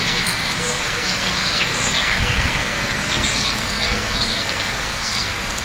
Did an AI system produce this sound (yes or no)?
yes